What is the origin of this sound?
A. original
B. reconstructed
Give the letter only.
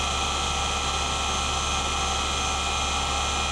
A